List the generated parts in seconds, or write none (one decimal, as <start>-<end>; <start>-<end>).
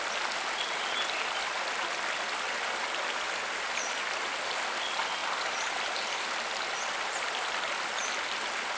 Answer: 5.2-6.2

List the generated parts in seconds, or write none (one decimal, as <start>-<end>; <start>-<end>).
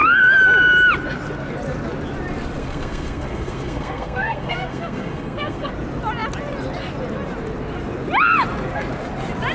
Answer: 2.6-5.7